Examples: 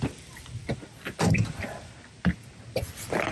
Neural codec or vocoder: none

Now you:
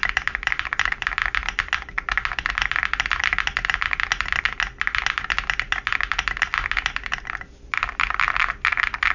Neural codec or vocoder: none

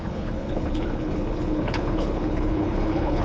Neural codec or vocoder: codec, HILCodec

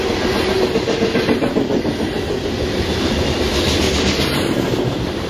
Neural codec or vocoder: none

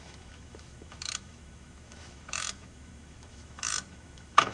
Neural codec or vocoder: autoencoder, DAC-VAE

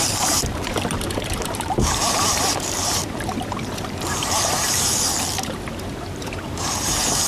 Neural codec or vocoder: vocoder, BigVGAN v2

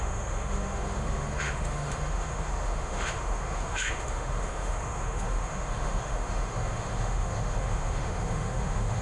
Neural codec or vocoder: autoencoder, DAC-VAE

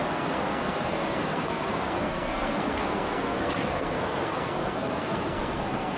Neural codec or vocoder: codec, SNAC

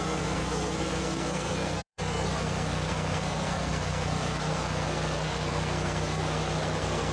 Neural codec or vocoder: codec, SNAC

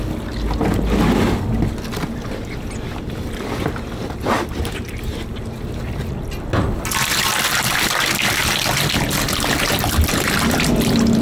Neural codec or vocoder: none